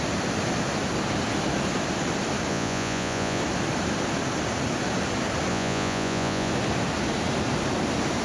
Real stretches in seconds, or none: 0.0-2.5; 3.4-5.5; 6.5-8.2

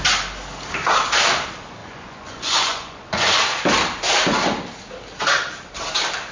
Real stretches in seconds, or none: 0.0-1.8; 3.4-6.3

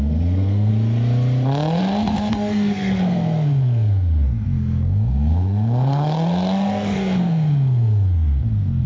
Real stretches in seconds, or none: 0.7-1.8

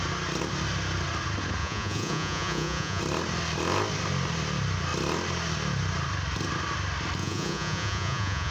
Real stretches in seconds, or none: 0.0-1.6; 3.0-7.2

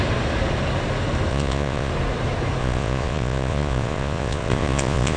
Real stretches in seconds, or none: 0.0-1.3; 1.9-2.6